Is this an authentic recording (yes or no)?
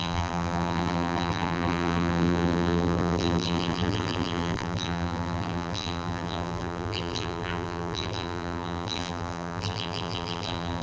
no